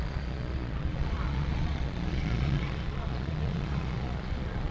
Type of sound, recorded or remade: remade